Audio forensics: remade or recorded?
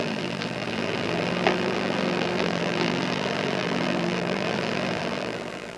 remade